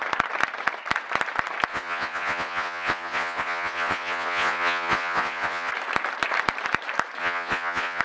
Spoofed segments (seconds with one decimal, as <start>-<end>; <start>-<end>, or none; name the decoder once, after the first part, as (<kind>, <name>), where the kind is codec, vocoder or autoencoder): 1.7-5.7 (vocoder, Vocos); 7.2-8.0